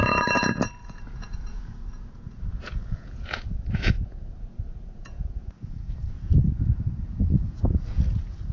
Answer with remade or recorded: remade